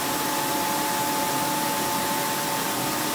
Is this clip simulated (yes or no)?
no